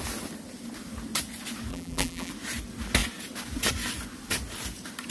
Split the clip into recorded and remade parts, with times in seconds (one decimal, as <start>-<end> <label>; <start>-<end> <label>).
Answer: 0.0-1.7 recorded; 1.7-2.3 remade; 2.3-5.1 recorded